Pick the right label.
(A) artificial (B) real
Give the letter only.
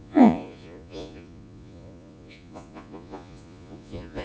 A